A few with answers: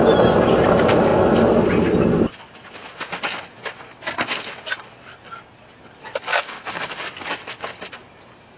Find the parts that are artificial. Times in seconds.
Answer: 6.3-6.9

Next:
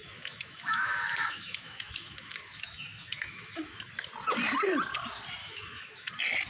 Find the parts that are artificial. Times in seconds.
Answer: 0.0-3.9; 5.4-6.1

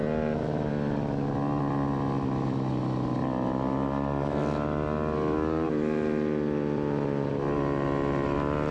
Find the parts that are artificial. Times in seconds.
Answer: none